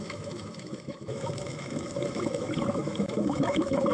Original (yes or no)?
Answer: no